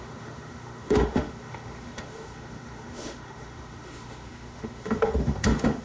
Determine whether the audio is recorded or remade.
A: remade